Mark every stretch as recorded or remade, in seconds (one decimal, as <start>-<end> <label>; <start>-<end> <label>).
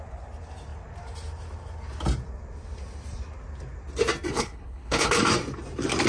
0.0-4.3 recorded; 4.3-5.2 remade; 5.2-6.1 recorded